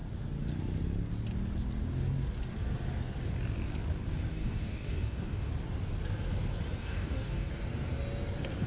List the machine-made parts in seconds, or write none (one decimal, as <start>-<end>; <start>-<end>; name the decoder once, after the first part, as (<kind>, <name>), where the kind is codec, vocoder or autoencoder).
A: 4.3-5.5 (codec, DAC); 6.8-7.5